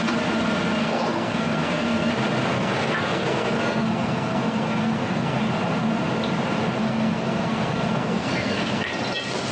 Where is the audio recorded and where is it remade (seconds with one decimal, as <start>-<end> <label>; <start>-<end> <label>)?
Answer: 0.0-0.8 recorded; 0.8-2.1 remade; 2.1-2.5 recorded; 2.5-5.4 remade; 5.4-6.8 recorded; 6.8-8.9 remade; 8.9-9.5 recorded